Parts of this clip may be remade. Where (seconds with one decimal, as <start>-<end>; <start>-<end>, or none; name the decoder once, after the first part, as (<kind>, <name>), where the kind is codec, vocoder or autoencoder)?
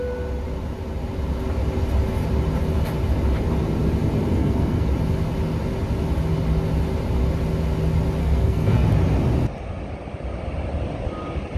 4.4-4.9 (codec, SNAC); 8.2-8.9